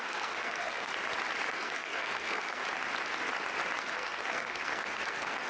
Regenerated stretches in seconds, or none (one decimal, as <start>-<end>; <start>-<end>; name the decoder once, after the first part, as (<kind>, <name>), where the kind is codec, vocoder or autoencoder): 0.0-0.9 (codec, SNAC); 1.5-2.6; 3.8-5.5